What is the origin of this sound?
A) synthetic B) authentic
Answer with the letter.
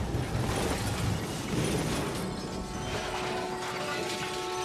B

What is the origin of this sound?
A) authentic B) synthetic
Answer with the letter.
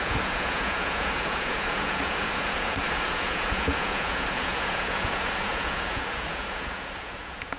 B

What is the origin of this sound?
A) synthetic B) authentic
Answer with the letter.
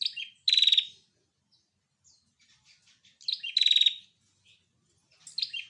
B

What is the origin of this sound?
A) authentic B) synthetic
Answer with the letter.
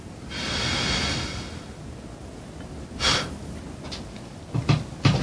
A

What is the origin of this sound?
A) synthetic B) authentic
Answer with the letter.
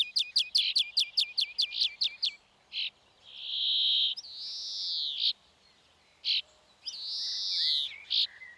B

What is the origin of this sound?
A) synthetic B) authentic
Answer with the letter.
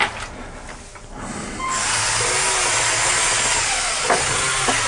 B